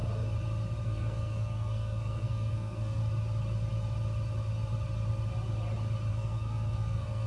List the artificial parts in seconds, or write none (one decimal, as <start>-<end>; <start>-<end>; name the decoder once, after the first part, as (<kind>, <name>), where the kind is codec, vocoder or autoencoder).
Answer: 0.8-3.0 (codec, SNAC); 6.1-7.3